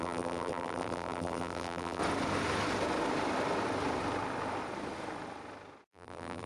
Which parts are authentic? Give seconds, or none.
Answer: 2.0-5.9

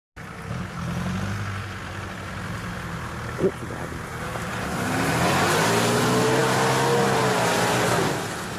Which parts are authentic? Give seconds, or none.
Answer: 0.0-8.6

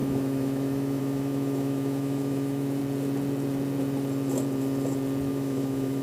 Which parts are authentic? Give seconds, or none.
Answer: 2.8-5.3